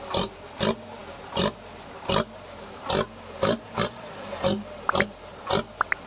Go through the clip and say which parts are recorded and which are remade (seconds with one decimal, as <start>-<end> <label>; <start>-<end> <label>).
0.0-6.1 recorded